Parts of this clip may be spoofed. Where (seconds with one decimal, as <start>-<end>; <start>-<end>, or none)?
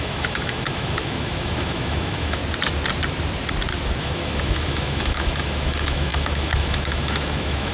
0.0-2.4; 4.0-7.7